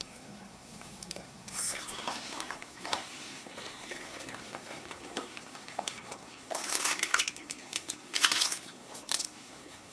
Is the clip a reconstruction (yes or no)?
yes